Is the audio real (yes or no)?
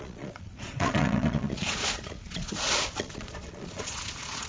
no